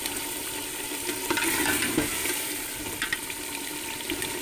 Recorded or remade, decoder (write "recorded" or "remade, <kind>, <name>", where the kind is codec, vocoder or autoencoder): recorded